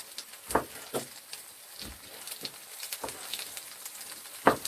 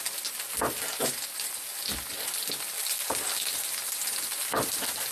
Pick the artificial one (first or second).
first